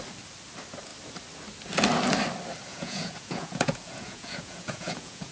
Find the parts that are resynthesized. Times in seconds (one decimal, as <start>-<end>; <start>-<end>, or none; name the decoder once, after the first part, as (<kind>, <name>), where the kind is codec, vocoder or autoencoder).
2.7-5.3 (vocoder, Vocos)